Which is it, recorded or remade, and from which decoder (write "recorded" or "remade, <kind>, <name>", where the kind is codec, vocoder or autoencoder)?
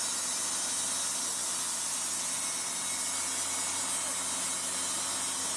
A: recorded